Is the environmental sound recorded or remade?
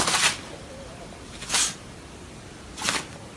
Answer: recorded